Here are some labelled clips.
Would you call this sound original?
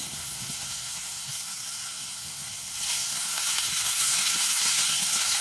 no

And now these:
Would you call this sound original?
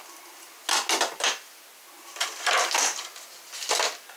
yes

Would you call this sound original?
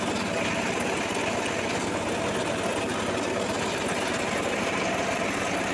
yes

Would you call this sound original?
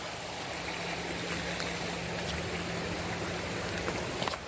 yes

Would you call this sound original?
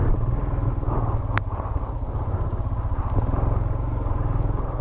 yes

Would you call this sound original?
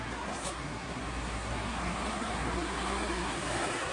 no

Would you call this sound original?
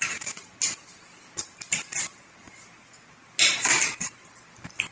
yes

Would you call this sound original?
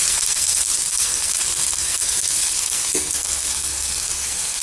no